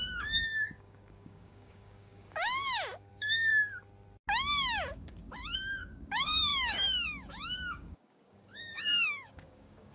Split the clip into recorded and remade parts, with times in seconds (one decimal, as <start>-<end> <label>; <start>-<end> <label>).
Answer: 0.0-3.5 remade; 3.5-4.5 recorded; 4.5-9.9 remade